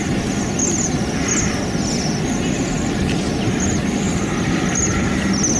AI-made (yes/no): no